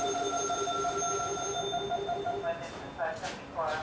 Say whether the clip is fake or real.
real